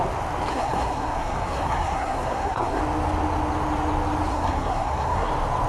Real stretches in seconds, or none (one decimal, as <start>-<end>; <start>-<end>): 0.0-0.5; 2.8-4.3; 5.3-5.7